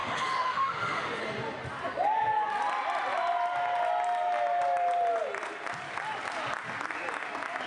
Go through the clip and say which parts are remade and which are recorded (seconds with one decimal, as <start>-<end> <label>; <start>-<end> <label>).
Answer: 0.0-1.2 remade; 1.2-7.7 recorded